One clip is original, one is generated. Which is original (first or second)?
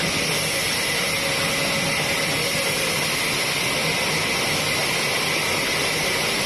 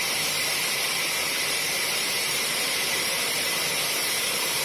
first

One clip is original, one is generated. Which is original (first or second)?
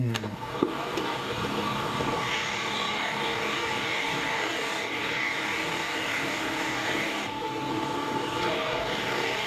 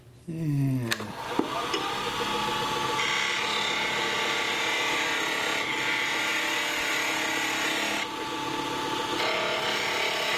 second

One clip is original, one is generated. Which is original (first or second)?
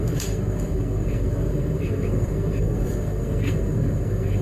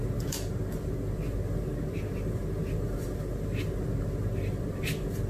second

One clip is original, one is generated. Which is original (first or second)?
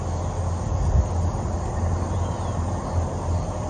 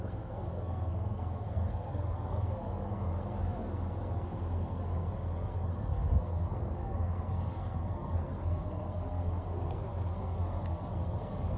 first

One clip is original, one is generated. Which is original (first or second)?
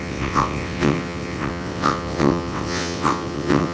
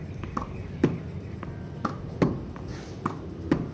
second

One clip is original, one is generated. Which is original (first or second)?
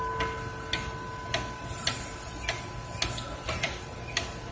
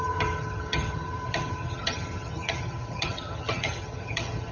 first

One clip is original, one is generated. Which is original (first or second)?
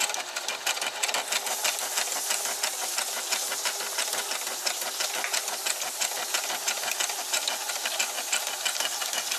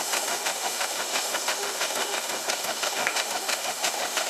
first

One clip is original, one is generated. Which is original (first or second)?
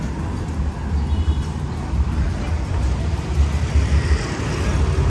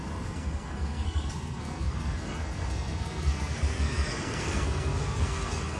first